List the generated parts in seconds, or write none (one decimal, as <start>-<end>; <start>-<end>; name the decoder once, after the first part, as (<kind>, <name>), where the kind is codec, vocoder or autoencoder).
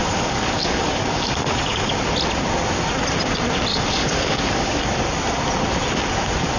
0.0-1.9 (codec, DAC); 3.7-4.8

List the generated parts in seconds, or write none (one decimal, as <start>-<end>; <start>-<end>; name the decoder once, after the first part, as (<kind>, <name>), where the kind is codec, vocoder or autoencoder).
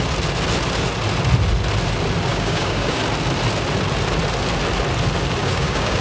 2.3-3.0 (codec, DAC); 5.4-6.0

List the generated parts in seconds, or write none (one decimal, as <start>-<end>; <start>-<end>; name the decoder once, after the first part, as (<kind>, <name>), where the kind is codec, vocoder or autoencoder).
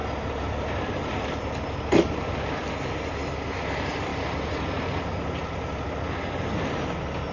none